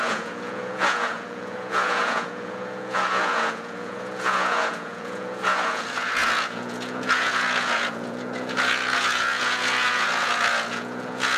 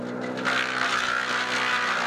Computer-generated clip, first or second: first